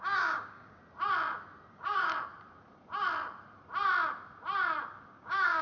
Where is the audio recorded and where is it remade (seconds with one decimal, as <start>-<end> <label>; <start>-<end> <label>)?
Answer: 0.0-0.8 remade; 0.8-1.7 recorded; 1.7-2.1 remade; 2.1-5.1 recorded; 5.1-5.6 remade